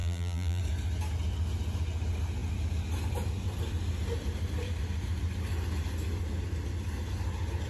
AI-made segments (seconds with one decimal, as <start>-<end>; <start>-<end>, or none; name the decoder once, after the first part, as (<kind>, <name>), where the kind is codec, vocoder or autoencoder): 0.0-0.6 (vocoder, BigVGAN v2)